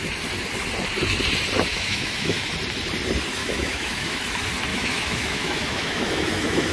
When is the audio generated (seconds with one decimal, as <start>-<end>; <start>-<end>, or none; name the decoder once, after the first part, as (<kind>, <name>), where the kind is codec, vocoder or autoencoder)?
1.7-2.5 (autoencoder, DAC-VAE); 3.4-4.2; 4.7-6.7